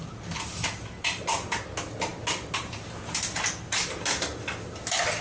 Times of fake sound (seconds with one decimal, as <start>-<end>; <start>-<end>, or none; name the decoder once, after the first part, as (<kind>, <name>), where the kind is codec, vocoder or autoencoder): none